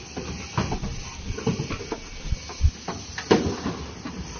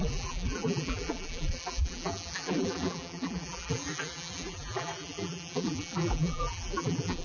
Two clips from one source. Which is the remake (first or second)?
second